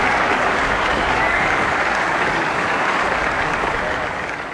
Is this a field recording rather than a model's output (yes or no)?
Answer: no